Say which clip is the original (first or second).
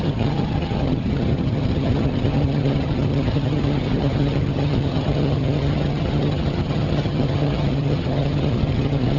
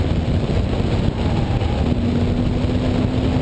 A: second